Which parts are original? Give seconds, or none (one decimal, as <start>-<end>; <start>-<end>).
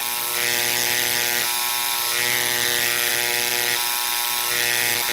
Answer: 0.0-5.1